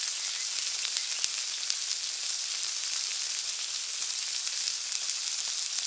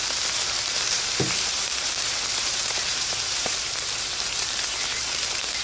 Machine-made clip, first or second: second